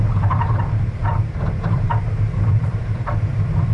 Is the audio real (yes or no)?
no